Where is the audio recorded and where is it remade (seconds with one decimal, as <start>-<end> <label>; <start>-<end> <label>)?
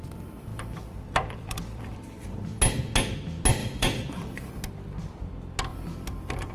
0.0-0.5 recorded; 0.5-2.6 remade; 2.6-3.6 recorded; 3.6-4.5 remade; 4.5-6.5 recorded